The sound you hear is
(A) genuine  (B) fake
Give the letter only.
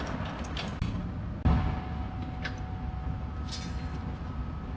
A